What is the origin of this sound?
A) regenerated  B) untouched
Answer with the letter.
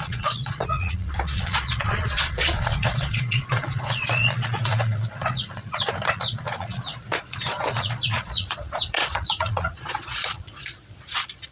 A